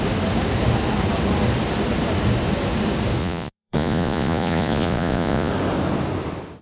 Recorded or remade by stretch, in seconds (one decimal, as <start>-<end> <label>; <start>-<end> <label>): 0.0-3.2 recorded; 3.2-5.5 remade; 5.5-6.6 recorded

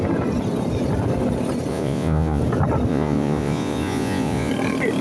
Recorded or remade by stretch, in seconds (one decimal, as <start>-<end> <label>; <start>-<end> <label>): 0.0-1.7 recorded; 1.7-2.4 remade; 2.4-2.9 recorded; 2.9-4.5 remade; 4.5-5.0 recorded

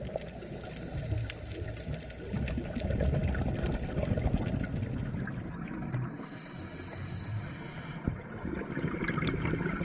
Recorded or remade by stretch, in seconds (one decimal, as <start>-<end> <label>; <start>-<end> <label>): 0.0-9.8 recorded

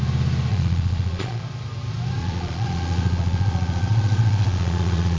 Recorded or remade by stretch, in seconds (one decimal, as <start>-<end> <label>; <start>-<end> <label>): 0.0-0.5 recorded; 0.5-1.4 remade; 1.4-2.2 recorded; 2.2-5.2 remade

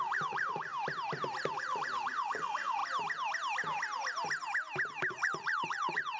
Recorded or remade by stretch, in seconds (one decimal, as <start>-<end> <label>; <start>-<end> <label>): 0.0-0.7 remade; 0.7-1.5 recorded; 1.5-2.8 remade; 2.8-5.1 recorded; 5.1-6.2 remade